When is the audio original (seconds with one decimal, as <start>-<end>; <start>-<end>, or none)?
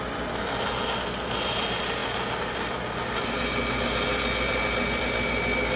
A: 0.0-5.8